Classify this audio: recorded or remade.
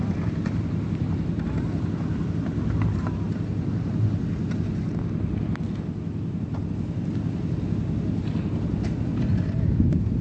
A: recorded